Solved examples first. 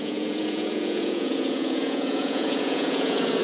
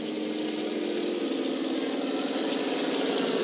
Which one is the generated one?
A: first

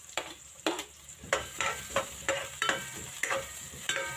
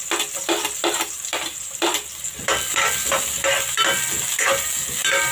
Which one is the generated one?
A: first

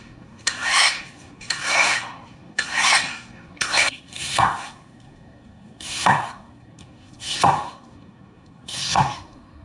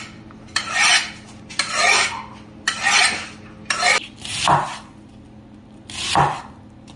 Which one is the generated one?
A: first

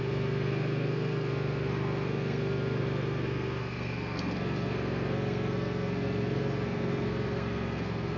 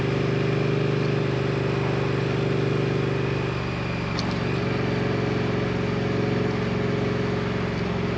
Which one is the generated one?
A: first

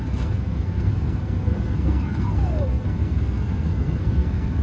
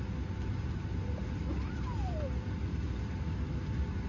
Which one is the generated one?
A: first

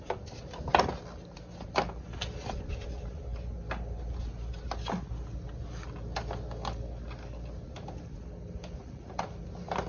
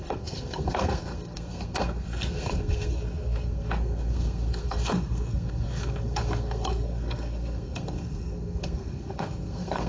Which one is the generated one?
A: second